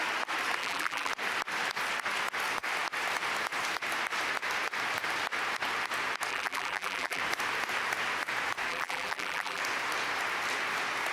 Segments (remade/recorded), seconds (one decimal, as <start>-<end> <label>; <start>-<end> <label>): 0.0-0.6 recorded; 0.6-1.1 remade; 1.1-6.3 recorded; 6.3-7.2 remade; 7.2-8.7 recorded; 8.7-9.6 remade; 9.6-11.1 recorded